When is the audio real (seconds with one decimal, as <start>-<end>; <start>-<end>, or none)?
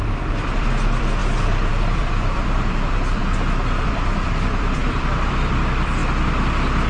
1.2-1.7; 3.2-3.8; 6.0-6.9